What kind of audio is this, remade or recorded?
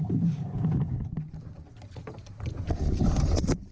recorded